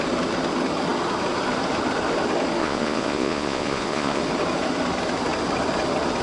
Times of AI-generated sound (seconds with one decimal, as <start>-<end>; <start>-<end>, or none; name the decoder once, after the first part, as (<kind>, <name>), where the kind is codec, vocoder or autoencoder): 2.6-4.2 (vocoder, Vocos)